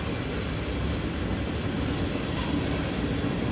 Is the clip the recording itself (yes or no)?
yes